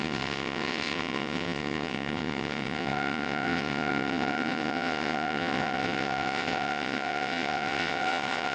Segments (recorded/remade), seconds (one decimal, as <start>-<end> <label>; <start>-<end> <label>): 0.0-8.5 remade